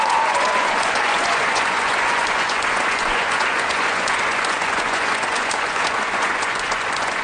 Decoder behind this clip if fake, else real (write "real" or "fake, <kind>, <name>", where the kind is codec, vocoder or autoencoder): fake, vocoder, Vocos